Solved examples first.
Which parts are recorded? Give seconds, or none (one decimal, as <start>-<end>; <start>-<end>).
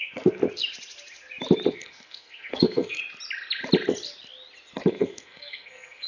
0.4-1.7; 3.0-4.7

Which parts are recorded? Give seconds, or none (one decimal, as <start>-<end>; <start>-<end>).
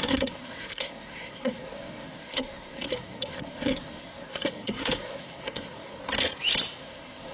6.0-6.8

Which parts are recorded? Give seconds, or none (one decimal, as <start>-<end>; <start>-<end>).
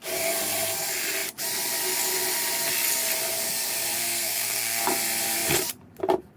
0.0-4.0; 4.8-6.4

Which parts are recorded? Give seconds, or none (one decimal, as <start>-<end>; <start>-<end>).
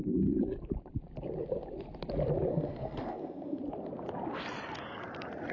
0.0-2.5; 3.6-5.5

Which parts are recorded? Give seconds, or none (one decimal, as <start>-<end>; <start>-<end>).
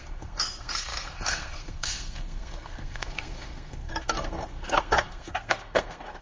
none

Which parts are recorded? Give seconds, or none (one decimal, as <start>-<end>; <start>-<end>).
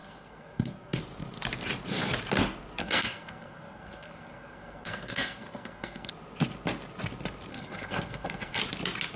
1.0-2.8; 6.1-7.5; 8.6-9.2